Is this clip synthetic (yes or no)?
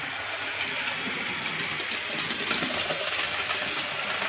no